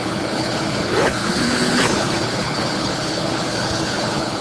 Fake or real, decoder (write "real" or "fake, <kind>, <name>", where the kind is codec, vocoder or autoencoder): fake, codec, HILCodec